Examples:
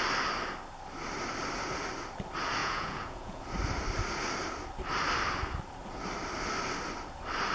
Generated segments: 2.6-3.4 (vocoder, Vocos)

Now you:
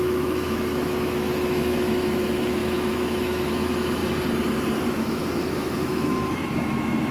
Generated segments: 0.0-4.0 (autoencoder, DAC-VAE); 4.9-7.1

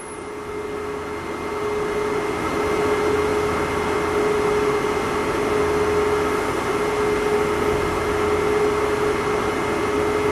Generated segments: none

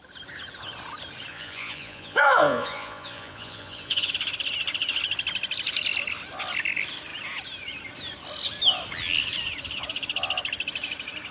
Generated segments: 1.3-4.1 (vocoder, Vocos)

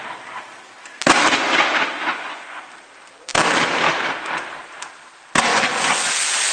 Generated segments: 2.1-2.7 (vocoder, Vocos); 5.5-6.1